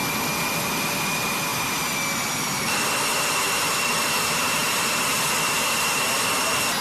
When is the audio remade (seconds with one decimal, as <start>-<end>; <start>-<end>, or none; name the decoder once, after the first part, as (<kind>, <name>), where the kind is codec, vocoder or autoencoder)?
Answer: none